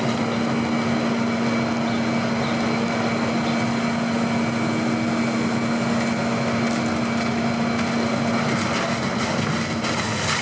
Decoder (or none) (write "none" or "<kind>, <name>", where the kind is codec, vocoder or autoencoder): none